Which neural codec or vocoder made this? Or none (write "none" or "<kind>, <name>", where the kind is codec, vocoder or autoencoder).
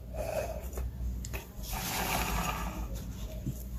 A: none